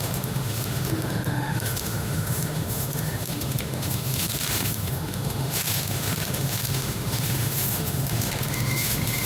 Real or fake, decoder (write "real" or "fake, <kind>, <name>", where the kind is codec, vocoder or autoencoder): fake, autoencoder, DAC-VAE